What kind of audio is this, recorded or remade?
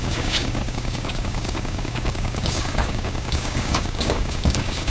remade